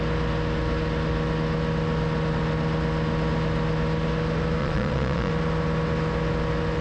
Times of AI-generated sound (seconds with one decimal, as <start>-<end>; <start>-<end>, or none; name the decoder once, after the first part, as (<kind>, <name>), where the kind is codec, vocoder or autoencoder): 4.6-5.3 (vocoder, Vocos)